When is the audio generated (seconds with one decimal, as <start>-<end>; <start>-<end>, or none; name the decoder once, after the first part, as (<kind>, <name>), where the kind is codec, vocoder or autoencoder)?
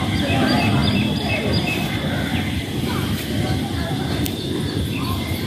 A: 0.0-5.5 (vocoder, BigVGAN v2)